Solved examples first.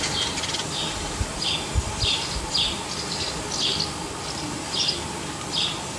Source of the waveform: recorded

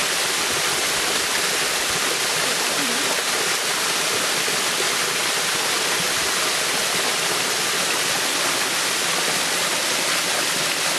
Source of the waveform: recorded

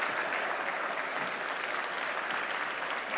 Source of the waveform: recorded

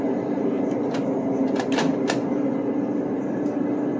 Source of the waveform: recorded